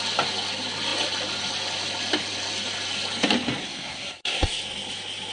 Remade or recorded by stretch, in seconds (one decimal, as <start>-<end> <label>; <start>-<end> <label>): 0.0-3.6 recorded; 3.6-4.6 remade; 4.6-5.3 recorded

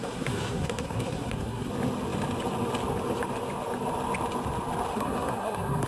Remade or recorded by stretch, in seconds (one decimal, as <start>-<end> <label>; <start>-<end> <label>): 0.0-1.7 remade; 1.7-4.9 recorded; 4.9-5.9 remade

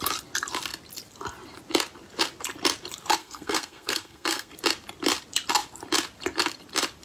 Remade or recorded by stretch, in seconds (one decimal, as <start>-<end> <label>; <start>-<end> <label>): 0.0-3.2 recorded; 3.2-4.5 remade; 4.5-7.0 recorded